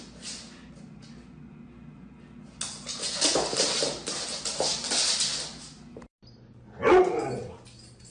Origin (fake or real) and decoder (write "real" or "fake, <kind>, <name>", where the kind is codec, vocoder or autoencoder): real